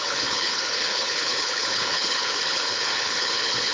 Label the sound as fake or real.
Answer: fake